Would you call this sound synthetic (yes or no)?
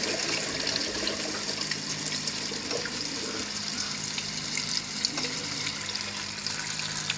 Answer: no